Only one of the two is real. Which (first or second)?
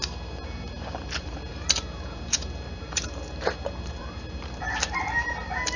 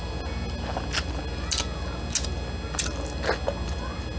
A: second